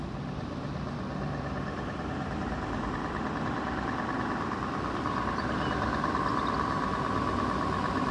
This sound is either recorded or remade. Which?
recorded